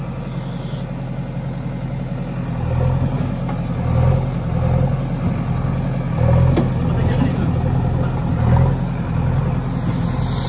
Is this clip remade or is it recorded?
recorded